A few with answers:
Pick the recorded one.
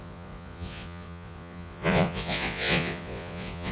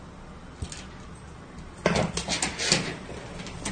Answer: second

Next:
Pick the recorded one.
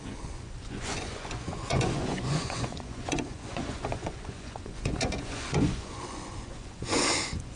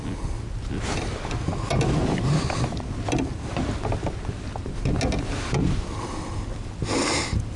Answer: second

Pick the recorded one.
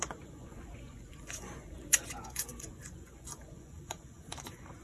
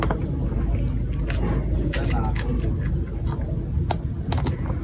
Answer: second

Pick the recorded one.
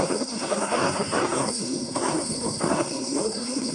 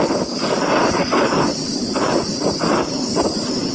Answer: second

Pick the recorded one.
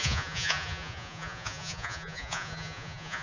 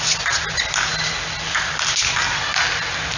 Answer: second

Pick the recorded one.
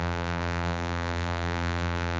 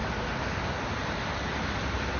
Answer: second